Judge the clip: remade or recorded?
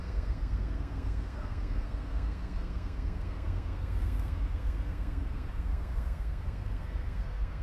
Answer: remade